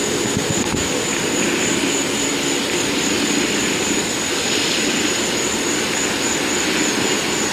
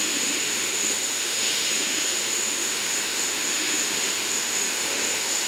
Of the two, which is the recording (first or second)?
first